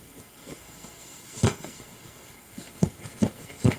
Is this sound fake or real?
fake